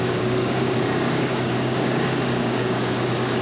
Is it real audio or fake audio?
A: fake